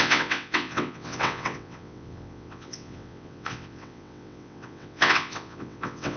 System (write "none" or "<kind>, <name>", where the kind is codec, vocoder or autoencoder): vocoder, WaveNeXt